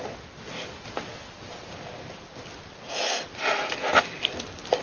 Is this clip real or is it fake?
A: real